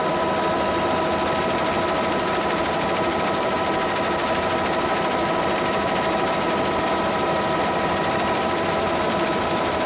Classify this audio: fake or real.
fake